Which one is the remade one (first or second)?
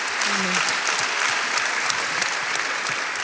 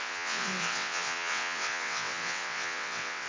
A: second